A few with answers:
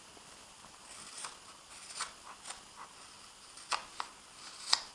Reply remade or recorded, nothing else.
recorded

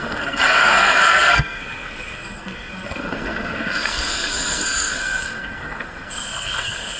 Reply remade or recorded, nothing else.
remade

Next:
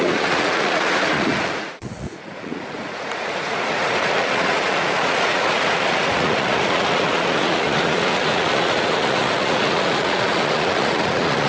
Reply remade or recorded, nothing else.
remade